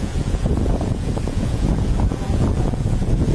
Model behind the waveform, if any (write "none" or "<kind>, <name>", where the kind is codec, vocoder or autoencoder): vocoder, Vocos